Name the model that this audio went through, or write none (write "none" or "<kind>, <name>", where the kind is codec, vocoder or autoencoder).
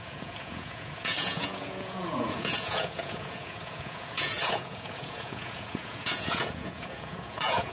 vocoder, Vocos